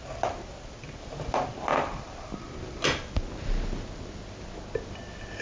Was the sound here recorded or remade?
recorded